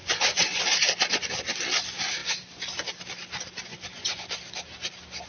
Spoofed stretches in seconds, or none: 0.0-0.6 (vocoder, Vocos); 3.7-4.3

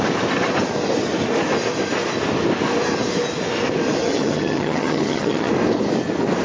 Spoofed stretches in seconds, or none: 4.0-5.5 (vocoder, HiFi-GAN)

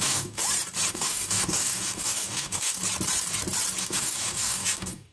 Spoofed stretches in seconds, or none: 0.0-0.4 (codec, DAC); 0.9-2.8; 3.8-5.1